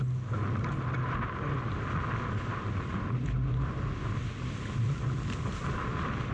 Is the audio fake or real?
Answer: real